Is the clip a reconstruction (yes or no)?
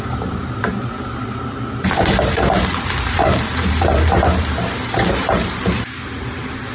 yes